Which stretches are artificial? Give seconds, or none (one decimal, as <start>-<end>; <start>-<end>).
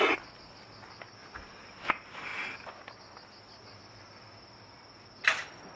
none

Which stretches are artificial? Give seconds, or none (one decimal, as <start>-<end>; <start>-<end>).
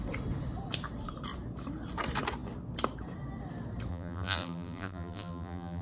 3.9-5.8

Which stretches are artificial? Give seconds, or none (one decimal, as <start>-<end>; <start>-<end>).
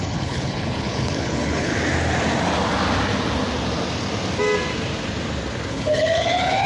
0.0-1.7; 5.7-6.7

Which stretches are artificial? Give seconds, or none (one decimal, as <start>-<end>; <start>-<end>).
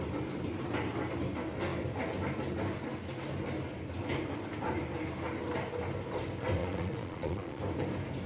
6.6-7.6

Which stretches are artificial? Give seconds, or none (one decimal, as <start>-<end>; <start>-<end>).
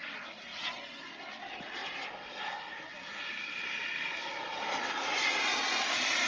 none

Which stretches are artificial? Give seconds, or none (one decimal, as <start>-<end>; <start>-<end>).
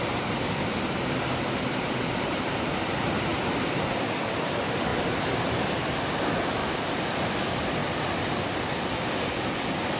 none